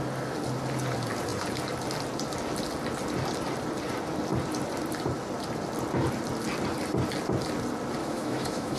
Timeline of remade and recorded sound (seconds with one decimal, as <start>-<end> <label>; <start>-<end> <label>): 0.0-8.0 recorded; 8.0-8.8 remade